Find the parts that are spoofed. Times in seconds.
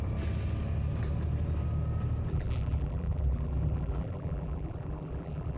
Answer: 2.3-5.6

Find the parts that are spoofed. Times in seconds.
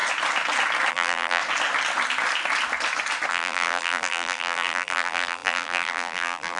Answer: 0.9-1.4; 3.3-6.6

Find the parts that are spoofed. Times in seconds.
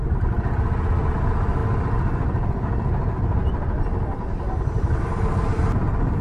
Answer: none